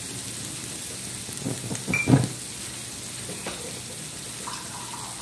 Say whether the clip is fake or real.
real